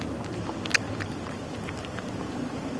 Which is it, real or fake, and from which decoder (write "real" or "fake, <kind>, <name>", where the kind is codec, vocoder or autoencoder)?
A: real